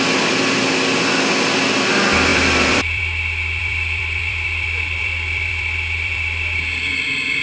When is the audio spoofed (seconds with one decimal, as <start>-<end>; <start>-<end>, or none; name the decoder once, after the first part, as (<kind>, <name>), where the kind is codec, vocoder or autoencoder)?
2.3-3.0 (vocoder, BigVGAN v2); 3.6-6.9